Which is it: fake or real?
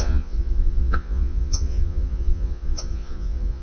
fake